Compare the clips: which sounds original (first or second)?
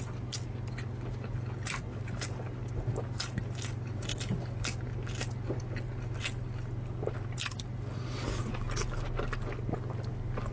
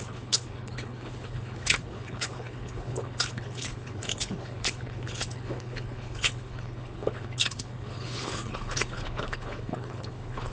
first